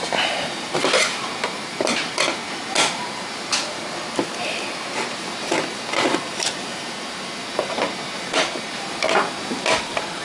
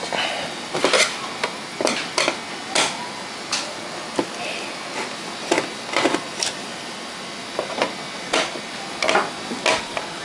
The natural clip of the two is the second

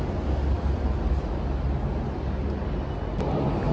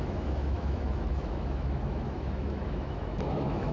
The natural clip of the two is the first